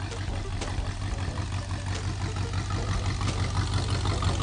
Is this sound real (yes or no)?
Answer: yes